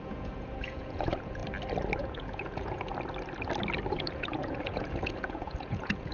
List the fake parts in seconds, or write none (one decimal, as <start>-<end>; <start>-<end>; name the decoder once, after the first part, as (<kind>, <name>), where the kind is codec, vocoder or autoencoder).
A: 0.0-1.4 (vocoder, Vocos); 2.0-2.9; 3.9-6.1